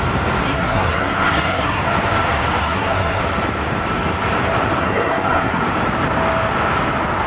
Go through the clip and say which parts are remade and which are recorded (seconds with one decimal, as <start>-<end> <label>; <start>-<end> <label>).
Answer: 0.0-0.4 recorded; 0.4-1.8 remade; 1.8-2.6 recorded; 2.6-3.2 remade; 3.2-4.8 recorded; 4.8-5.6 remade; 5.6-7.3 recorded